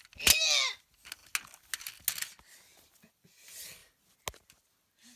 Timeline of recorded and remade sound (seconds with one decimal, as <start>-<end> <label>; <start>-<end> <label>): 0.0-5.2 recorded

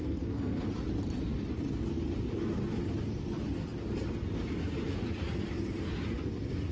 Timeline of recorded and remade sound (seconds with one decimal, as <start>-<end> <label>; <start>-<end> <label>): 0.0-0.7 remade; 0.7-6.7 recorded

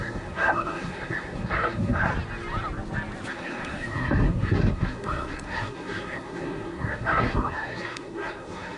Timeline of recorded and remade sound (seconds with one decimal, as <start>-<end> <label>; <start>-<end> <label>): 0.0-2.1 remade; 2.1-3.3 recorded; 3.3-8.8 remade